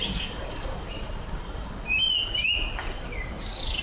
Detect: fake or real real